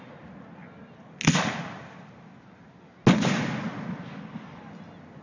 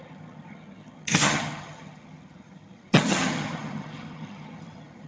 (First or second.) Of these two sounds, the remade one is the second